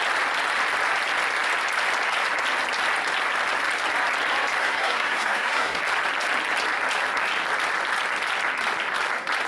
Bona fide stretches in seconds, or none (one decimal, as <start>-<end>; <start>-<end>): 0.0-4.6; 5.8-9.5